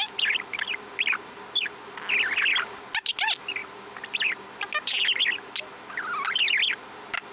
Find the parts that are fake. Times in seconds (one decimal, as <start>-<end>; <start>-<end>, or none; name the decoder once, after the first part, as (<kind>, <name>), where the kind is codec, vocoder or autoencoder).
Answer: none